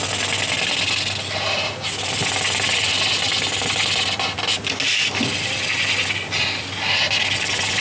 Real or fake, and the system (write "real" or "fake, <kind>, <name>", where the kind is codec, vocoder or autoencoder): real